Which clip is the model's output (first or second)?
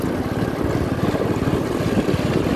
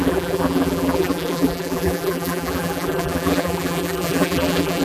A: second